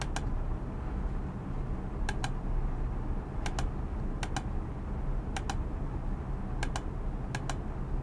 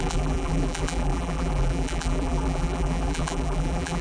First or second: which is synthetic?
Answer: second